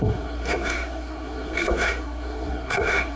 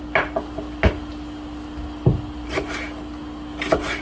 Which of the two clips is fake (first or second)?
first